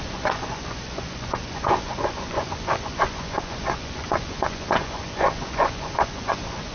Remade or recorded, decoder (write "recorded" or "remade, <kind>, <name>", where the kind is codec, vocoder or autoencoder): remade, vocoder, Vocos